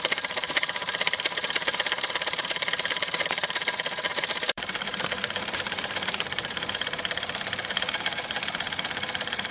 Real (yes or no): no